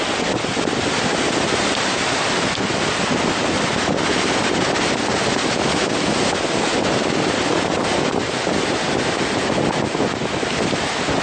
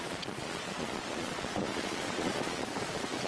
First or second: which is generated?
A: second